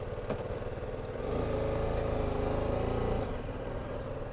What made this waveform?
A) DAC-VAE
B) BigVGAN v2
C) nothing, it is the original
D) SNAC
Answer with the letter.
C